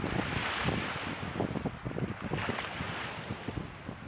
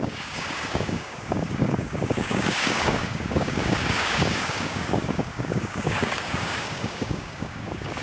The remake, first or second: second